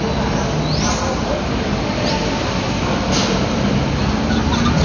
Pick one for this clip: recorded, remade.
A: recorded